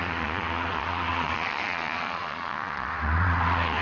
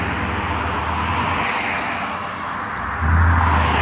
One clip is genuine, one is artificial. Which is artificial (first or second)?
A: first